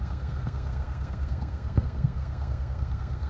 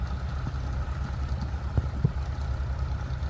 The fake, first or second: first